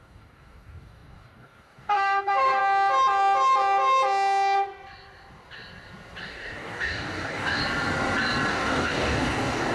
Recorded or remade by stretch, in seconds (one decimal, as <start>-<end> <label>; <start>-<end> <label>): 0.0-2.6 remade; 2.6-6.2 recorded; 6.2-7.6 remade; 7.6-8.5 recorded; 8.5-9.7 remade